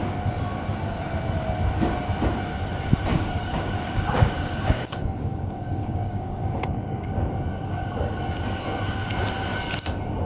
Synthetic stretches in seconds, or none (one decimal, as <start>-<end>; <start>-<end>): 3.1-7.3